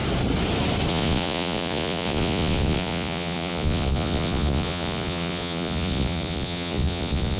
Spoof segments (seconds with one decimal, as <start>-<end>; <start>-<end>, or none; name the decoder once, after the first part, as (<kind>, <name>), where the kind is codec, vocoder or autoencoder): 0.9-7.4 (vocoder, Vocos)